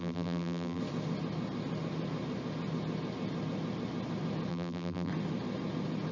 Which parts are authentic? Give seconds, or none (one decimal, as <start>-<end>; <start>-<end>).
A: 0.8-4.5; 5.1-6.1